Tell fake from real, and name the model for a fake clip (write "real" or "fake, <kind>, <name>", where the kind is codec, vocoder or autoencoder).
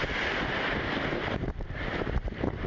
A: real